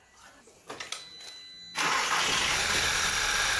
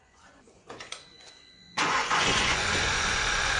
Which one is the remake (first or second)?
second